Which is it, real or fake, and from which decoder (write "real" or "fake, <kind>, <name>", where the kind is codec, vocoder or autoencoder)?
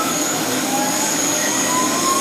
fake, codec, DAC